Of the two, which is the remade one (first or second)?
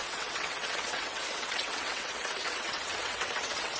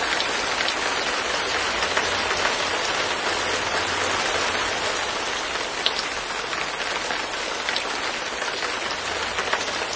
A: first